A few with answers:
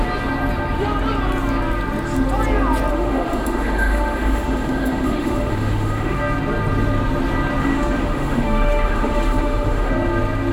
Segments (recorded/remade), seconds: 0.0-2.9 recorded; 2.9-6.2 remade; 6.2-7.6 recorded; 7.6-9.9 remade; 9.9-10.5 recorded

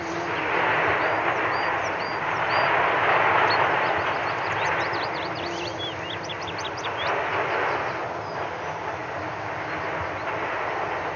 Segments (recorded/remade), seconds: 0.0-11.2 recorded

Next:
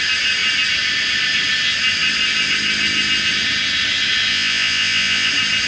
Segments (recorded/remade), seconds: 0.0-4.3 recorded; 4.3-5.3 remade; 5.3-5.7 recorded